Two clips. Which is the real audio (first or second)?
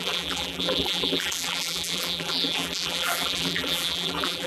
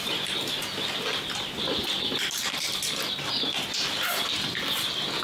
second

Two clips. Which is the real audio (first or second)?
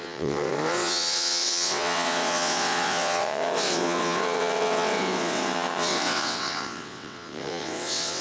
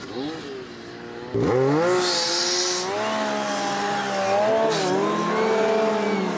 second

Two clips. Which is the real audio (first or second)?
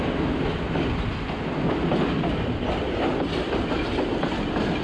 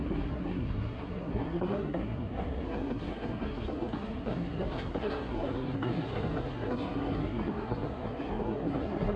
first